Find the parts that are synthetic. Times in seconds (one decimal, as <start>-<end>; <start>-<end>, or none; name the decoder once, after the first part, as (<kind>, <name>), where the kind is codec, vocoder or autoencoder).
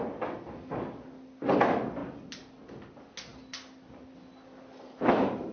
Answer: none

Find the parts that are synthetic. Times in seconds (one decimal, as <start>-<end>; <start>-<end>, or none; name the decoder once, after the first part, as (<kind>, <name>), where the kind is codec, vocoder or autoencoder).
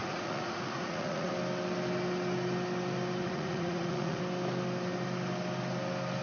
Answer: 0.0-1.3 (vocoder, Vocos); 3.2-4.2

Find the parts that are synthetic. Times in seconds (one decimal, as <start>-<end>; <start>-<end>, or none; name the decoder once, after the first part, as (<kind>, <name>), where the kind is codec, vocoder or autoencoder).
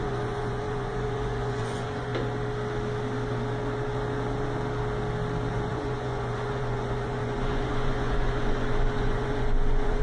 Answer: 0.0-2.1 (vocoder, Vocos); 5.5-10.0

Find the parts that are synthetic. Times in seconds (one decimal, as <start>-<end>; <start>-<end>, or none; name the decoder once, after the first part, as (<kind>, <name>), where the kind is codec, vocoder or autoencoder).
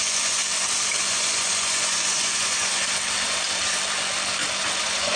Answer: 0.0-0.4 (vocoder, Vocos); 1.0-2.8; 4.8-5.2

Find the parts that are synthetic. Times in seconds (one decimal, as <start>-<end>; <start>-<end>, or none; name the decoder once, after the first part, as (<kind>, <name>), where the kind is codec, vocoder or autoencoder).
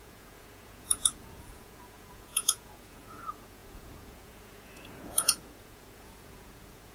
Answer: 0.0-6.9 (vocoder, Vocos)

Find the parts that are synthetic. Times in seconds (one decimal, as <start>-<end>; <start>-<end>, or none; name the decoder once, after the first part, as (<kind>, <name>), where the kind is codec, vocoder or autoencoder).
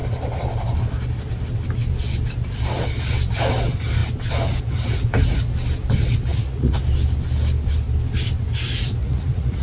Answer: 6.3-6.8 (vocoder, Vocos); 9.0-9.6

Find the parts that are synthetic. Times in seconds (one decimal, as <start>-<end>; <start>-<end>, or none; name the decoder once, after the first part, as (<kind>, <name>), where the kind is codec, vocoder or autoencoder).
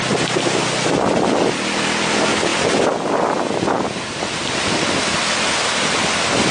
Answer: none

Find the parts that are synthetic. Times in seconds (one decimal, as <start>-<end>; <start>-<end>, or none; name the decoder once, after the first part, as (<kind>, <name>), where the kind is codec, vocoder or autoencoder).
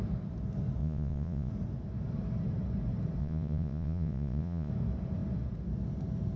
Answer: 0.8-1.5 (vocoder, Vocos); 3.2-4.7